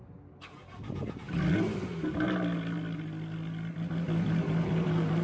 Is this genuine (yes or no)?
yes